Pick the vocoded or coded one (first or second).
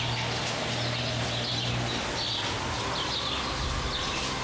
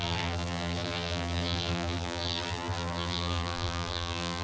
second